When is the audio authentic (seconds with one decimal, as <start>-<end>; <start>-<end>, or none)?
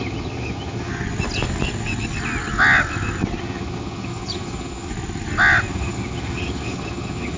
0.9-3.4; 4.9-5.7